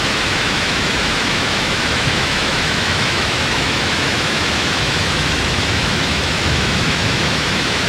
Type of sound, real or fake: fake